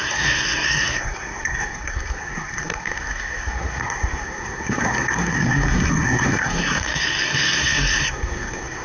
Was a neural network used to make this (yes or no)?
yes